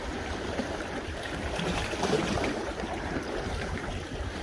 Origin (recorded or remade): remade